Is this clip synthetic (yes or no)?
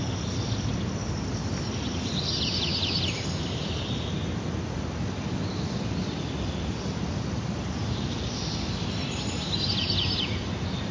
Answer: no